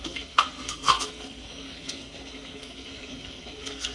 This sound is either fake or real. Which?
fake